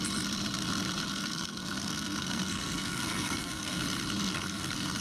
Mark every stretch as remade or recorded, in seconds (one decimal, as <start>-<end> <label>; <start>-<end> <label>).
0.0-1.1 recorded; 1.1-3.8 remade; 3.8-4.2 recorded; 4.2-5.0 remade